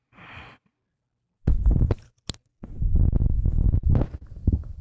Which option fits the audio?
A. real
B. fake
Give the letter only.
A